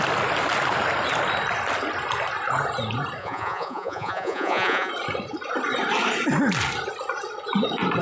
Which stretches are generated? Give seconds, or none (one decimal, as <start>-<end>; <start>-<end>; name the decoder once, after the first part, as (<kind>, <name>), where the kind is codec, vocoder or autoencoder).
3.2-4.9 (vocoder, Vocos)